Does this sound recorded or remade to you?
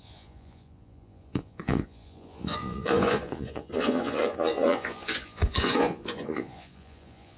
remade